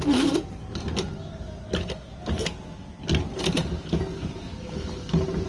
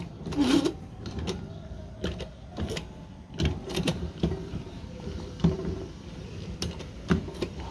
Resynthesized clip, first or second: second